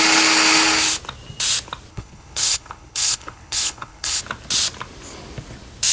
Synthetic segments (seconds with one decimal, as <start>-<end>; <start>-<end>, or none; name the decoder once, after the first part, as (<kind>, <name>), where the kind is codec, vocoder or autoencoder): 1.9-4.2 (codec, HILCodec)